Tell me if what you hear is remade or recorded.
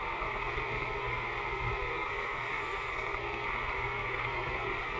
remade